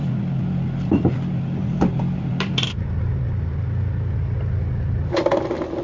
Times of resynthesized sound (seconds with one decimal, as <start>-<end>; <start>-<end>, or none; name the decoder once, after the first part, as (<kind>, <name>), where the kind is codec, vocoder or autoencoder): 0.0-2.3 (vocoder, BigVGAN v2)